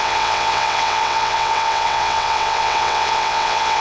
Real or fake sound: fake